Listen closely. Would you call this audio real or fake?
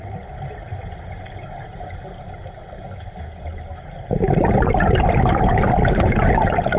real